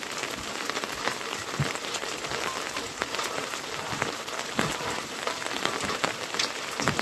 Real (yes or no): no